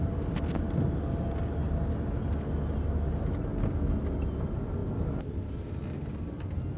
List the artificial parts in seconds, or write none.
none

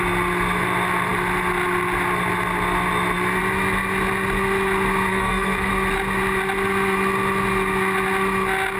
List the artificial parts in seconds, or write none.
5.1-5.7 (codec, SNAC)

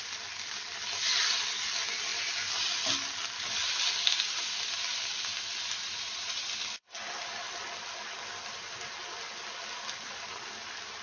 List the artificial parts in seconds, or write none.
5.8-6.4 (vocoder, Vocos)

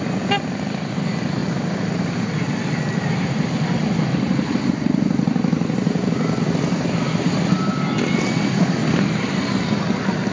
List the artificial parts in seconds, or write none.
1.4-4.6 (vocoder, BigVGAN v2)